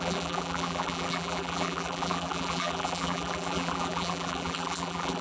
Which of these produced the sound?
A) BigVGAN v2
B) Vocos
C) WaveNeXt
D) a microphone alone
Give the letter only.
A